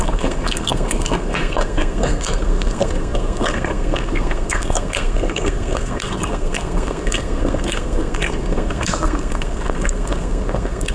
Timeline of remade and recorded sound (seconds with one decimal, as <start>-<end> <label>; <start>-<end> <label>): 0.0-10.9 remade